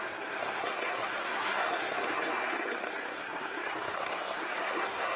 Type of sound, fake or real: fake